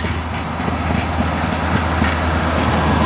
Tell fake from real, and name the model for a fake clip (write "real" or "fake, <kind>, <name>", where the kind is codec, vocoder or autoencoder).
real